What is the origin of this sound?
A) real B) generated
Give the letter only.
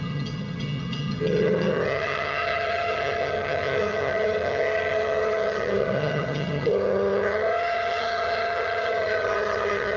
B